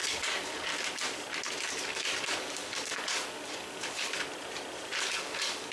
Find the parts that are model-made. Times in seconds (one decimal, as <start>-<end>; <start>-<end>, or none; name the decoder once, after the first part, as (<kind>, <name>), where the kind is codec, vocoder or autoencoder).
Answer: 0.0-0.7 (codec, DAC); 1.7-4.3; 5.0-5.7